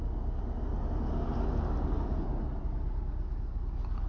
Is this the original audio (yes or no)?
yes